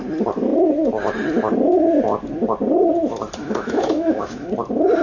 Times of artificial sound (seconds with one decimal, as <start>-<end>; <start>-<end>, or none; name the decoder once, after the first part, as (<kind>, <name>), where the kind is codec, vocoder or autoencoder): 3.4-4.5 (autoencoder, DAC-VAE)